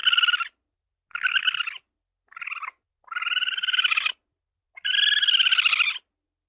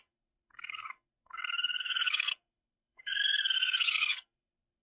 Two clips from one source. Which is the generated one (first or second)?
second